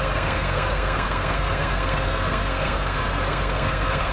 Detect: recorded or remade remade